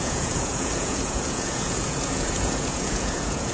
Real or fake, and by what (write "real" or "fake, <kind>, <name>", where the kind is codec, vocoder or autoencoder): fake, vocoder, Vocos